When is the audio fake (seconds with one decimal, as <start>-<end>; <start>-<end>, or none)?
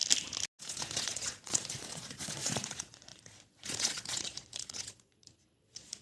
0.6-6.0